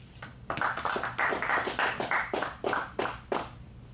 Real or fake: real